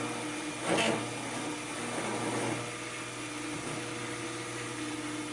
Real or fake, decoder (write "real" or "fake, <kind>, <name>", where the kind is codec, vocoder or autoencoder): real